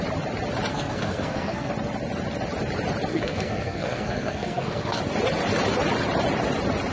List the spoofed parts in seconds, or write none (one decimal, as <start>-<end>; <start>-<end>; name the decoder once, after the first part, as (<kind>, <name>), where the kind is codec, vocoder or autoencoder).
0.7-1.7 (codec, SNAC); 3.1-5.0